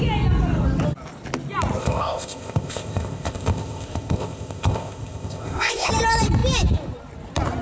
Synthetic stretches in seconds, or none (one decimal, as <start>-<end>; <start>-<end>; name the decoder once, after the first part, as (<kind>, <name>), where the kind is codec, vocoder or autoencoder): 1.8-5.9 (codec, ZipCodec)